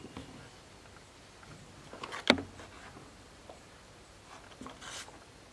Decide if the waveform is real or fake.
real